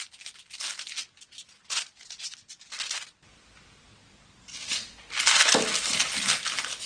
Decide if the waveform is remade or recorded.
recorded